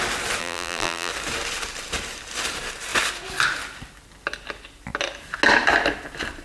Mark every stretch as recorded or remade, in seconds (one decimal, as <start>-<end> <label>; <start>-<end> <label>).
0.0-0.4 recorded; 0.4-1.1 remade; 1.1-6.4 recorded